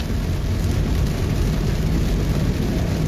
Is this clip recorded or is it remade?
recorded